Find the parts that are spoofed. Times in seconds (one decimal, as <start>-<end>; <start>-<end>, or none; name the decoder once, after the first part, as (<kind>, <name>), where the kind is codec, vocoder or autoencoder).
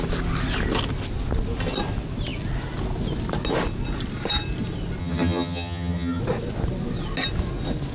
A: 5.0-6.2 (vocoder, HiFi-GAN)